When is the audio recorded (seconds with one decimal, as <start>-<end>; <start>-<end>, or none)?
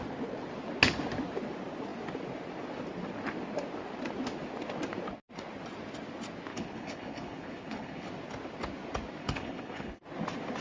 0.0-6.5; 8.1-9.2; 10.0-10.6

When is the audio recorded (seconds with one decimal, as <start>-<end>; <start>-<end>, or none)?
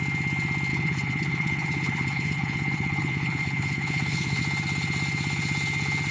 0.0-0.7; 4.4-6.1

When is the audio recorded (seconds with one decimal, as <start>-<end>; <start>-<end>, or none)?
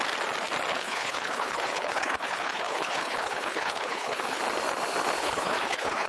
0.0-0.7; 4.4-5.2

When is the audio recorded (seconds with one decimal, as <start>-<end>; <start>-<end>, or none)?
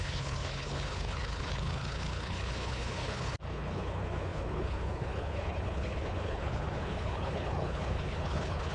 none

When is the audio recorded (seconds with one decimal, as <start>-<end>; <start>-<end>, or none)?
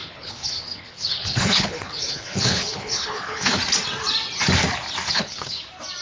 3.6-5.1; 5.6-6.0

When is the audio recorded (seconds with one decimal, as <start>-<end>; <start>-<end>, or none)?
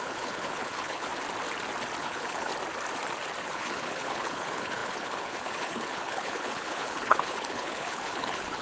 1.1-2.0; 2.5-3.4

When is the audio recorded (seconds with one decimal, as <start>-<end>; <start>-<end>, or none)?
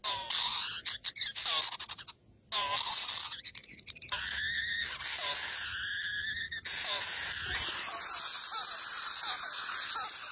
0.0-10.3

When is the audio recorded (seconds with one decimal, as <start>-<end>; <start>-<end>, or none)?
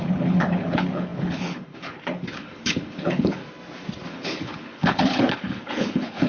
3.4-4.1